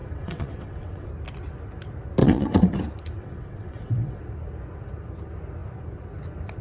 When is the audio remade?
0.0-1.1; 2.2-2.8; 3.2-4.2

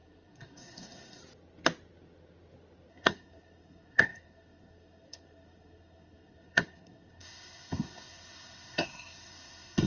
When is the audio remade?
0.0-1.2; 2.9-9.9

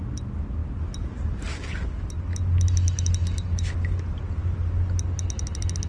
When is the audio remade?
none